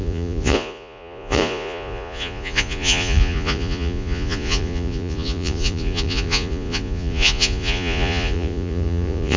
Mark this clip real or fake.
fake